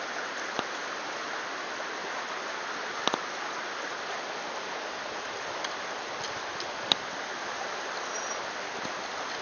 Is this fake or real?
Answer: real